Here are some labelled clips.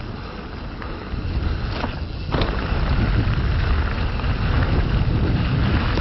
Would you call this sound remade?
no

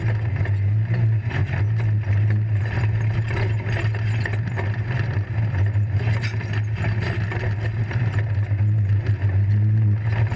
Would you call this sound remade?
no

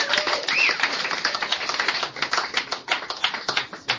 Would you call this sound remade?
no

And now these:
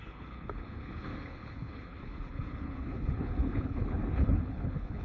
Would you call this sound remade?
yes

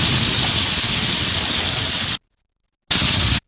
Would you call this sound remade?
no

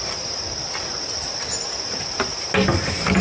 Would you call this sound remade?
no